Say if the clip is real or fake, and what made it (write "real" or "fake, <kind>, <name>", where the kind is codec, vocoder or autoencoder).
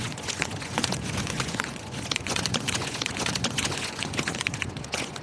fake, vocoder, Vocos